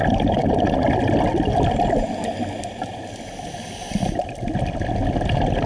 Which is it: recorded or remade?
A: recorded